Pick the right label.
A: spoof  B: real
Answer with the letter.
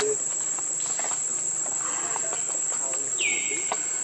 B